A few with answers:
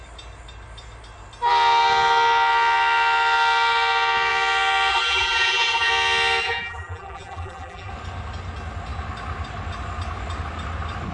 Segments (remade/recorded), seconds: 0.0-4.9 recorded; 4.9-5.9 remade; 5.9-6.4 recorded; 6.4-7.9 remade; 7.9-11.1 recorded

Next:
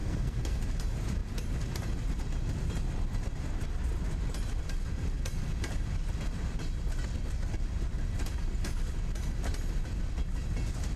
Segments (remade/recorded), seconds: 0.0-0.6 remade; 0.6-11.0 recorded

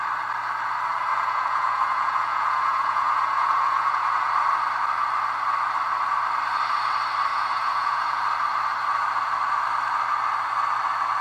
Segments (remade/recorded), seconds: 0.0-1.1 recorded; 1.1-4.3 remade; 4.3-7.3 recorded; 7.3-8.2 remade; 8.2-11.2 recorded

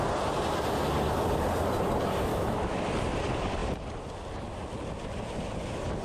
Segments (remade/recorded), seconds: 0.0-2.3 recorded; 2.3-2.8 remade; 2.8-6.0 recorded

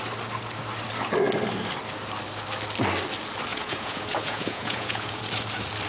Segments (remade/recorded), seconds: 0.0-3.5 recorded; 3.5-5.2 remade; 5.2-5.9 recorded

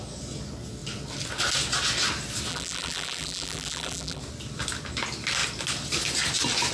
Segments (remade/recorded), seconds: 0.0-2.5 recorded; 2.5-4.2 remade; 4.2-6.7 recorded